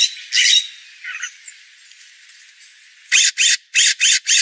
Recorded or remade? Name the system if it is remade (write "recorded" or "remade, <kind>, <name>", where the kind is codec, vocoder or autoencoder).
recorded